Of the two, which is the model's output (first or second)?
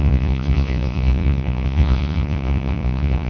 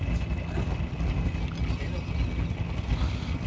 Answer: first